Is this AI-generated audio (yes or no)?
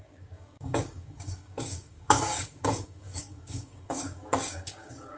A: yes